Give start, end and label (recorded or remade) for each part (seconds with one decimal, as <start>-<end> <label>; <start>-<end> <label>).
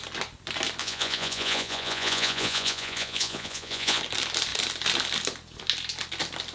0.0-0.8 recorded; 0.8-4.0 remade; 4.0-6.5 recorded